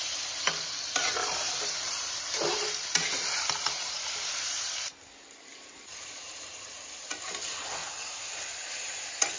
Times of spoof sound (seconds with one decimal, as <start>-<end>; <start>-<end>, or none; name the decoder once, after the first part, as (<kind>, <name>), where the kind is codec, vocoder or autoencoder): 1.2-4.8 (vocoder, BigVGAN v2); 5.5-7.1; 7.8-8.6